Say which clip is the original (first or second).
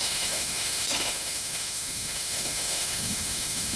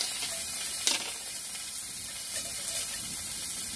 second